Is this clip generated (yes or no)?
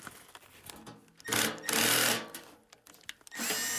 no